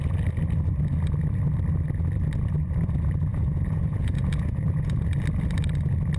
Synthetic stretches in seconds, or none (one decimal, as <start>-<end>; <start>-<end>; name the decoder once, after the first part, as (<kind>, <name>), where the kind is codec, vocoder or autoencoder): 3.3-5.1 (vocoder, Vocos)